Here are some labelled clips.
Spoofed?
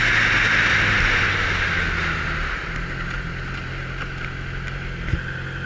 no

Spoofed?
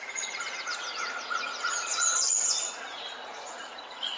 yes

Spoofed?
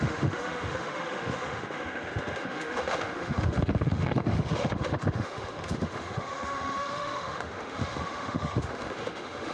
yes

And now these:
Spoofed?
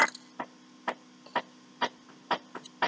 no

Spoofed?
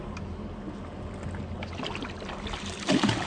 no